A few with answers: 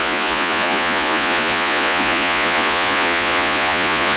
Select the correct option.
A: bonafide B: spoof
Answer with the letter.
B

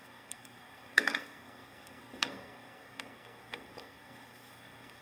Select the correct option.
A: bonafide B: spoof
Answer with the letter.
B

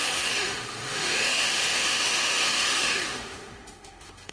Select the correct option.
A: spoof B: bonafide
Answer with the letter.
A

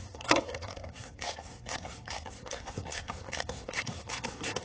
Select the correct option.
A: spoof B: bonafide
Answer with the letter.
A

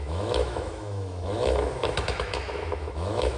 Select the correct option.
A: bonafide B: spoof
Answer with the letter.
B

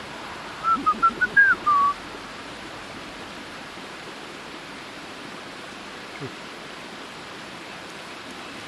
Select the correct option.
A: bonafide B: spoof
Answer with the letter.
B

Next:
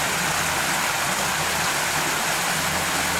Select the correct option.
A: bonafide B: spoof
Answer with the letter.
A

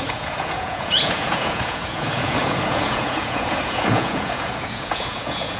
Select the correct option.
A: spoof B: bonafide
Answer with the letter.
A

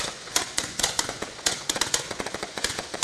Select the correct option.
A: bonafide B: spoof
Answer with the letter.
B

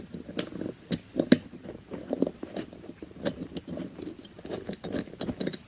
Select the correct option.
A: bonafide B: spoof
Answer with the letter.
A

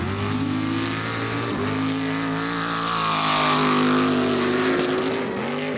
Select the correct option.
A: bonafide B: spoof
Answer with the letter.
A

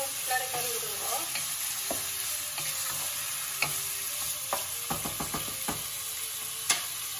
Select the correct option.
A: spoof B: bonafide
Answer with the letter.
B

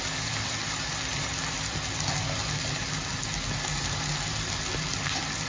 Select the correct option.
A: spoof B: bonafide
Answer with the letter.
B